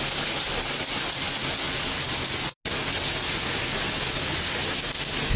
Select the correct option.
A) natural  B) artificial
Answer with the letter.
A